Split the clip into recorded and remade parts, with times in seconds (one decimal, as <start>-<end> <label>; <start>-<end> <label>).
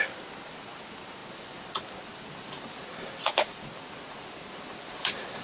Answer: 0.0-5.4 recorded